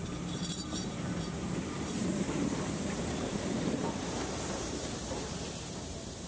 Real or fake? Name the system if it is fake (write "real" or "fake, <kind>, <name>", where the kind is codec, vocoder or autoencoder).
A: fake, vocoder, BigVGAN v2